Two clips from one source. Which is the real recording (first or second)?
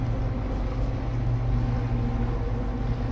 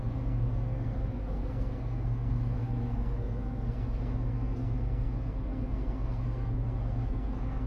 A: first